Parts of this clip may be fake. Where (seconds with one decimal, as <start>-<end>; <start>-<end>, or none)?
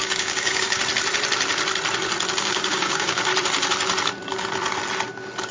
0.0-0.8; 2.4-3.3